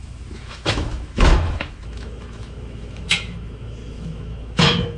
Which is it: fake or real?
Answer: fake